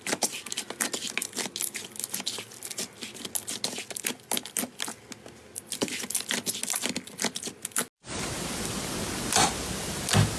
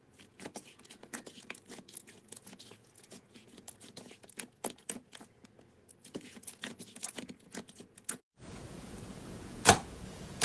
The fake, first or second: second